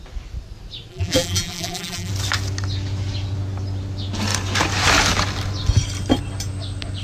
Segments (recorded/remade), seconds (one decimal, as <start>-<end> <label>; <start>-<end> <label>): 0.0-0.9 recorded; 0.9-2.1 remade; 2.1-7.0 recorded